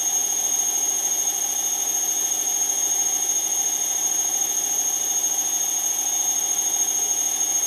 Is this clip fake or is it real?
fake